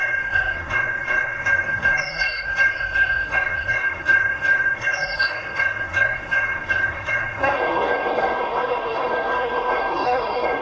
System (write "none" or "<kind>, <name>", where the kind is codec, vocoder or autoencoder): codec, SNAC